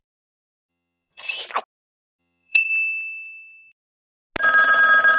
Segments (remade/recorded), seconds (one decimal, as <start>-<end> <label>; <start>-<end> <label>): 0.0-0.7 recorded; 0.7-1.4 remade; 1.4-2.2 recorded; 2.2-2.7 remade; 2.7-5.2 recorded